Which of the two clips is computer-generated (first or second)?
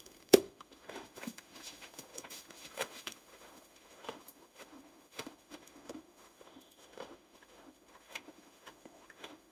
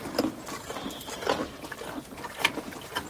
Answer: first